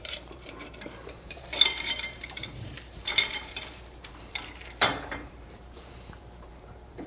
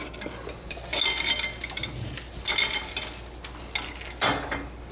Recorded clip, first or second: second